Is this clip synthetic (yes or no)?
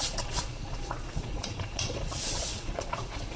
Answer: yes